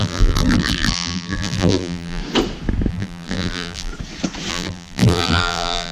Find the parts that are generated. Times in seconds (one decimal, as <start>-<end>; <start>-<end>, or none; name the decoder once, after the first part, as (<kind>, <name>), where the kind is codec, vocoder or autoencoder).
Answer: 0.0-2.2 (vocoder, BigVGAN v2); 2.9-3.9; 4.5-5.9